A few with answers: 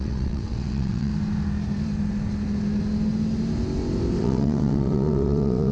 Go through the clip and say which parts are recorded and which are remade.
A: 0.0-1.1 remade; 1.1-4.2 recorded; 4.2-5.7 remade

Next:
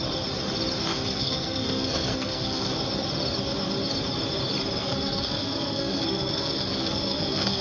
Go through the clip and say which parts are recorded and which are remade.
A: 0.0-0.9 recorded; 0.9-2.8 remade; 2.8-4.8 recorded; 4.8-7.6 remade

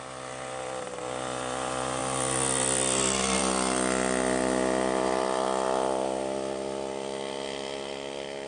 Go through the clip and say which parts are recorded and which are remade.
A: 0.0-8.5 recorded

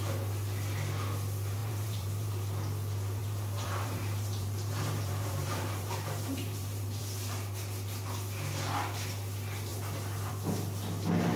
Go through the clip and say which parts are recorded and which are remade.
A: 0.0-1.6 recorded; 1.6-2.3 remade; 2.3-3.2 recorded; 3.2-7.0 remade; 7.0-11.4 recorded

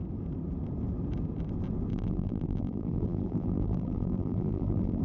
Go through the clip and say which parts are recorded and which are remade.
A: 0.0-1.9 recorded; 1.9-5.0 remade